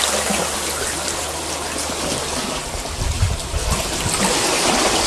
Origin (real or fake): real